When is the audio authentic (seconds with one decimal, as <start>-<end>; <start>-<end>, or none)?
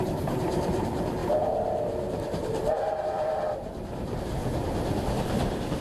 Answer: 4.4-5.0